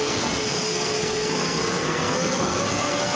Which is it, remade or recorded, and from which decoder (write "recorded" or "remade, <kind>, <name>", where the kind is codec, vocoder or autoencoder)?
remade, codec, SNAC